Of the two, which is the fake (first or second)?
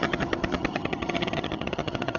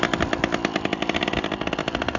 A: first